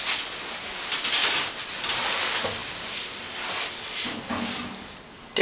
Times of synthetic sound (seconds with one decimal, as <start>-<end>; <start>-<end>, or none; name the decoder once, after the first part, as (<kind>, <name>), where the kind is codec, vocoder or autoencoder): 1.2-1.7 (vocoder, BigVGAN v2); 2.6-3.4